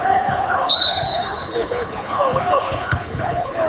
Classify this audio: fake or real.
fake